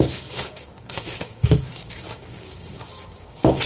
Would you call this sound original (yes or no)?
no